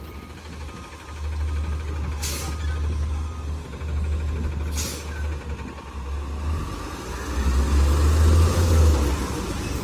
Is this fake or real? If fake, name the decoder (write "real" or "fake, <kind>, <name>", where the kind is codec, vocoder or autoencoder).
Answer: real